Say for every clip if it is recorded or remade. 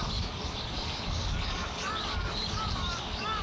remade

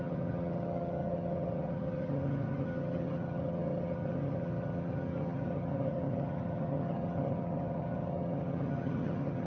remade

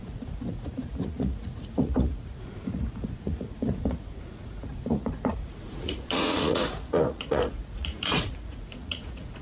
remade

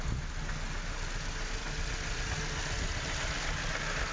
recorded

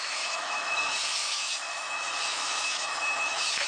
remade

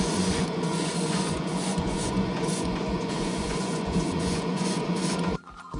remade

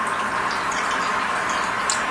recorded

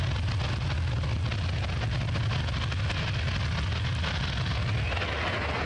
recorded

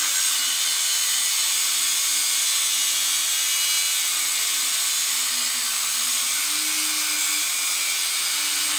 recorded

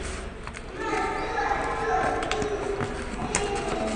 recorded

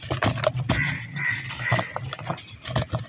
recorded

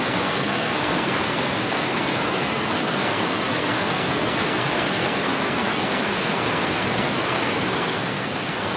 remade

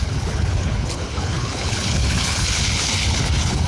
remade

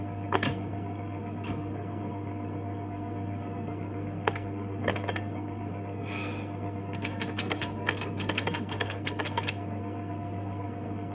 remade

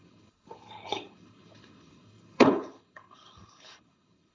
remade